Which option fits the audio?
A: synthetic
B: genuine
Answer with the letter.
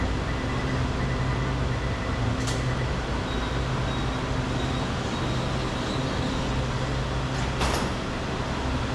B